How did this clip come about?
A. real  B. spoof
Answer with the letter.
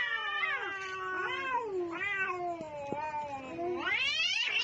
A